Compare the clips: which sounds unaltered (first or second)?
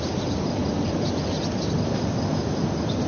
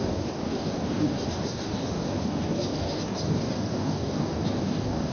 first